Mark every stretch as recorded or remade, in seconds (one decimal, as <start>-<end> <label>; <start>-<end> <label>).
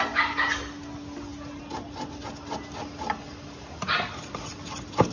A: 0.0-5.1 recorded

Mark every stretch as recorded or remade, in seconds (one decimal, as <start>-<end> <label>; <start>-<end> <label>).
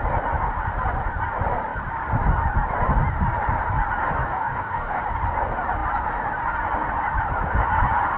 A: 0.0-4.2 recorded; 4.2-5.0 remade; 5.0-8.2 recorded